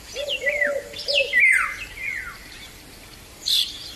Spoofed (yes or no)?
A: no